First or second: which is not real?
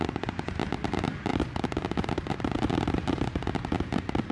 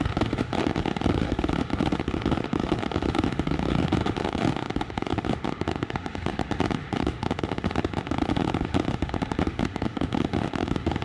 second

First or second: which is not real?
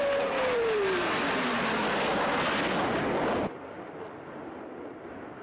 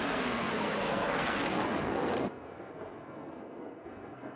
second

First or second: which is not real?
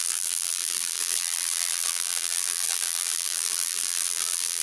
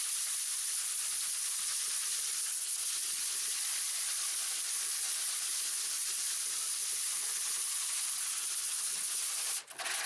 first